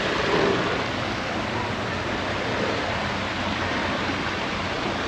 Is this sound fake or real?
real